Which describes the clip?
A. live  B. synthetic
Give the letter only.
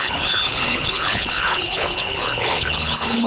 B